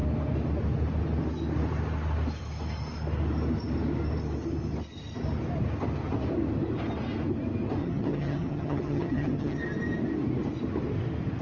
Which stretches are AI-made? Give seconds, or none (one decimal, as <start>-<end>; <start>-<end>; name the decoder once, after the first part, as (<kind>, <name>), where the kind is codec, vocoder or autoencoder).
7.8-9.6 (vocoder, HiFi-GAN)